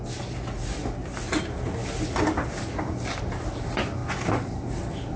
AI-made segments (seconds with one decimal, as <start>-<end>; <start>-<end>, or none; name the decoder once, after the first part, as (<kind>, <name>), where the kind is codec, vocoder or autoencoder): none